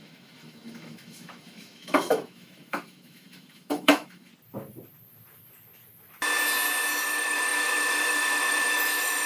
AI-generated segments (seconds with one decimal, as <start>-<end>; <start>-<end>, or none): 0.0-4.3; 7.0-9.3